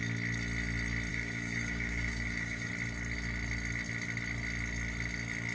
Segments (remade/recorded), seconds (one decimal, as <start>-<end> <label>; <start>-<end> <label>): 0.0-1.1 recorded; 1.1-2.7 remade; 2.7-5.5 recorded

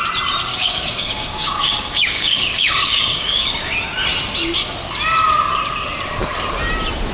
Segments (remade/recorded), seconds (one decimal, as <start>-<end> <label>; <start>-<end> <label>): 0.0-0.5 recorded; 0.5-3.7 remade; 3.7-7.1 recorded

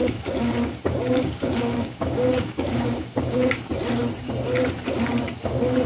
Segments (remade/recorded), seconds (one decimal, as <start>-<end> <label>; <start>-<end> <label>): 0.0-3.5 remade; 3.5-5.9 recorded